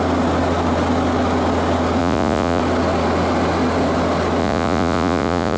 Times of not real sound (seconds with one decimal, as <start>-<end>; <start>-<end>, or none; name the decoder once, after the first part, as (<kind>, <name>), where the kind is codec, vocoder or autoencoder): 2.0-2.6 (vocoder, Vocos); 4.4-5.6

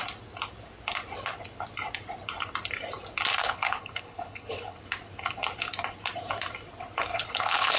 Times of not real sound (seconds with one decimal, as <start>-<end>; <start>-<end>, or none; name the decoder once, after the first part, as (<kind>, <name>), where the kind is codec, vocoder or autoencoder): 3.4-4.8 (codec, HILCodec); 7.1-7.8

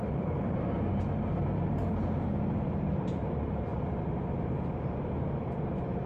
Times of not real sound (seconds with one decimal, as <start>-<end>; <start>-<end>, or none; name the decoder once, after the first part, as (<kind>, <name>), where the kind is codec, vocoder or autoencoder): 0.0-3.7 (vocoder, BigVGAN v2); 4.4-6.1

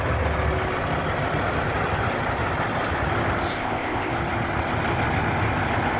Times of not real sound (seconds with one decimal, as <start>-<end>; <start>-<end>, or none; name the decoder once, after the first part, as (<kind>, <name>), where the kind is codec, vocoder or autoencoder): 3.5-4.1 (codec, ZipCodec)

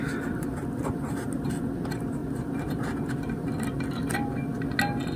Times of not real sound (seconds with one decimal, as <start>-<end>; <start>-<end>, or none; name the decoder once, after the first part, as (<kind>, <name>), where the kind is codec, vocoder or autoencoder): 0.8-1.6 (vocoder, BigVGAN v2)

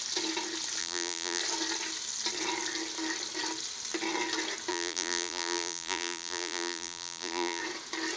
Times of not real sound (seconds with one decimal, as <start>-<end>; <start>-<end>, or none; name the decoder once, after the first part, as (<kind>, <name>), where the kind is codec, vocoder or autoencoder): 0.8-1.4 (vocoder, BigVGAN v2); 4.7-7.6

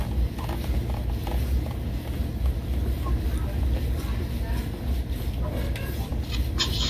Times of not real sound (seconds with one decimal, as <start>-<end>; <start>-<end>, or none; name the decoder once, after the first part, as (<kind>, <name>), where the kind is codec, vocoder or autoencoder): none

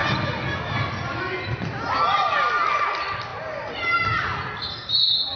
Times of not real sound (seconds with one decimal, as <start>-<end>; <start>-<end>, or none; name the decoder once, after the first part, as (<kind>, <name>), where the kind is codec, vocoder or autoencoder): none